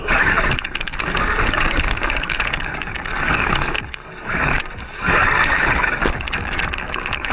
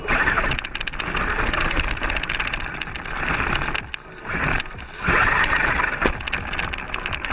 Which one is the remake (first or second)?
first